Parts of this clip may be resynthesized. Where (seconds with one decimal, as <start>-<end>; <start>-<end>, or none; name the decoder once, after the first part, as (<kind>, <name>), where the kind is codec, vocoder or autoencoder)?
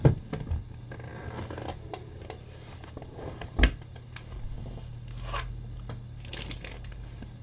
none